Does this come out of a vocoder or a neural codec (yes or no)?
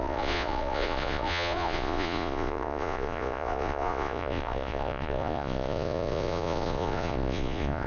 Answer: yes